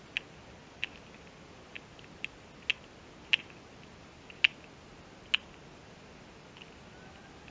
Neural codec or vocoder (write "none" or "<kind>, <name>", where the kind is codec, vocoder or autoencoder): none